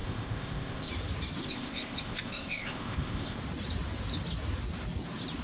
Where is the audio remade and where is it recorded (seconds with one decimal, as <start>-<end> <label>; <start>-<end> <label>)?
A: 0.0-0.9 remade; 0.9-1.4 recorded; 1.4-3.4 remade; 3.4-5.4 recorded